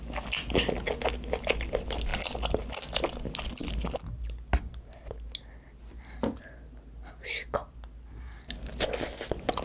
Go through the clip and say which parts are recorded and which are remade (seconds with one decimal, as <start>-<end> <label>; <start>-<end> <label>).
0.0-9.6 recorded